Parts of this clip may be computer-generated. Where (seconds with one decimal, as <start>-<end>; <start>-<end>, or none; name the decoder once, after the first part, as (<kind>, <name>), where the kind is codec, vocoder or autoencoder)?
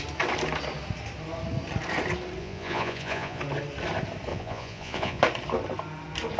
2.4-3.4 (vocoder, Vocos); 4.3-5.2